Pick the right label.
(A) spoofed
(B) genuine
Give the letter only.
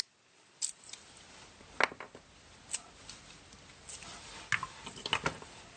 B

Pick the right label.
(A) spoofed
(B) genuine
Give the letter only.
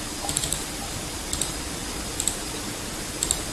B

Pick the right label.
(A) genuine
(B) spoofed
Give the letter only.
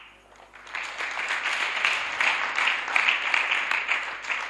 A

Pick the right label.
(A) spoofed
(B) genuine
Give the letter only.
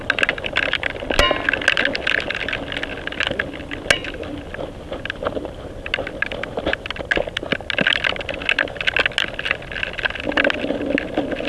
B